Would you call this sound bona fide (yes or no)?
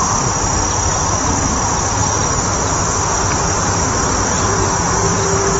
yes